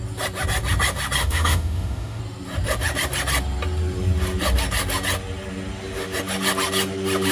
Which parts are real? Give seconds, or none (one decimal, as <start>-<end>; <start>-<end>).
0.0-1.2; 2.2-7.3